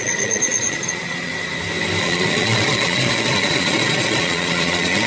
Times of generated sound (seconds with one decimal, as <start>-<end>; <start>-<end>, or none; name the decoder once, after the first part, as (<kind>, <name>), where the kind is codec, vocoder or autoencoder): 0.0-1.3 (vocoder, Vocos); 2.0-5.1